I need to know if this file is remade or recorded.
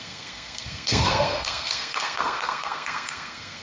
remade